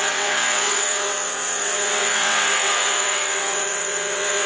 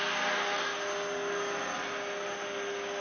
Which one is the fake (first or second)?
first